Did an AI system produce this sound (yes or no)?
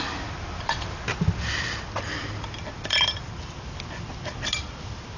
no